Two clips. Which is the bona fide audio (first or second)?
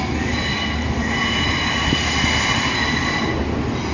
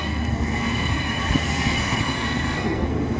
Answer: first